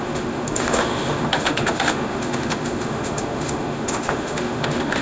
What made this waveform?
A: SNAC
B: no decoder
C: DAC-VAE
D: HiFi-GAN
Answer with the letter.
C